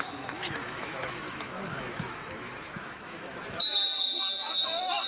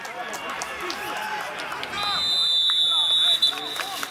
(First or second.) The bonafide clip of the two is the second